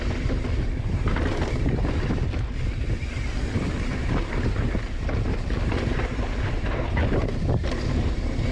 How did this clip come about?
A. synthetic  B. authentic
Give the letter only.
B